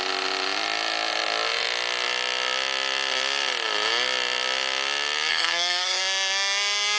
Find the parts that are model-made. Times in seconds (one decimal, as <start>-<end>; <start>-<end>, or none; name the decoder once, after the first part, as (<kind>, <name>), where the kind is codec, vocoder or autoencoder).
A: 5.3-6.0 (codec, SNAC)